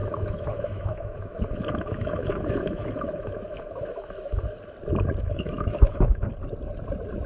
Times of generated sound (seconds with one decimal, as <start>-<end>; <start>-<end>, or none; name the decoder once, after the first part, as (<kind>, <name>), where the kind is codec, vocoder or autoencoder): 0.0-4.4 (autoencoder, DAC-VAE); 5.2-6.3